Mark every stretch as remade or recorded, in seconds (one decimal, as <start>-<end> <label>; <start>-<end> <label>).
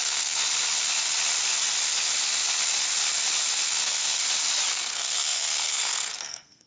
0.0-0.4 remade; 0.4-3.7 recorded; 3.7-4.2 remade; 4.2-4.7 recorded; 4.7-6.7 remade